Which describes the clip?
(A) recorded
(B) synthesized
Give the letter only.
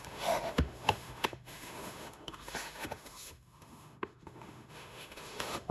B